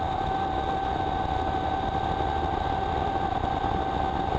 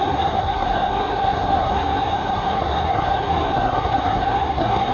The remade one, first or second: second